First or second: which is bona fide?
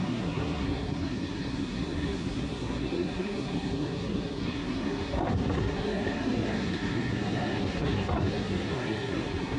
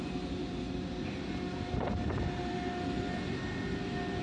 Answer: second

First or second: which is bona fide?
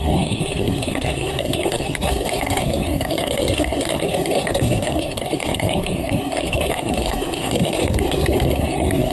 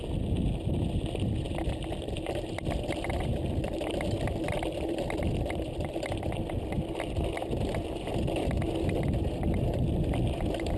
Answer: second